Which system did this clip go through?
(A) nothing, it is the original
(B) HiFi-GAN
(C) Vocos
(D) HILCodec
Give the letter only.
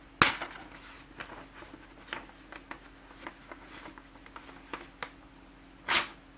A